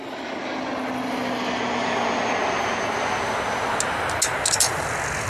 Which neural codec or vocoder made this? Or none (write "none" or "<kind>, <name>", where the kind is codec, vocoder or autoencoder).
none